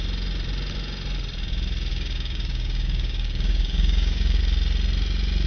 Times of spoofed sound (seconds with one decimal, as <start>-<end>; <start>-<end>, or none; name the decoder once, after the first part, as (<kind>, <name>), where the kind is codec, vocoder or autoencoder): 1.9-4.4 (codec, DAC)